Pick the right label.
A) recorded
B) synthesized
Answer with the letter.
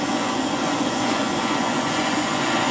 B